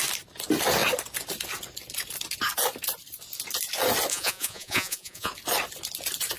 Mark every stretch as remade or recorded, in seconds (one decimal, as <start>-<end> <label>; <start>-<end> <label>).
0.0-4.1 recorded; 4.1-5.3 remade; 5.3-6.4 recorded